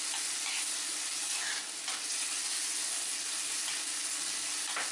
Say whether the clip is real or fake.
real